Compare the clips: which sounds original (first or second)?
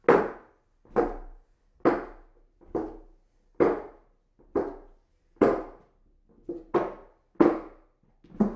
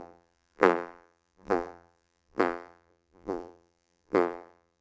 first